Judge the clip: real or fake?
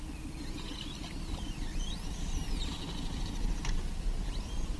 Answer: real